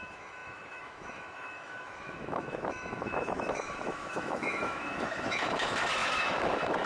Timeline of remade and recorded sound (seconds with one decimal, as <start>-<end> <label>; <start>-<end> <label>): 0.0-6.9 remade